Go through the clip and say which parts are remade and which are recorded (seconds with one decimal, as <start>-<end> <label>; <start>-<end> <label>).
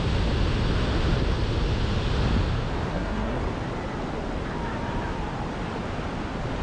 0.0-2.9 recorded; 2.9-3.4 remade; 3.4-6.6 recorded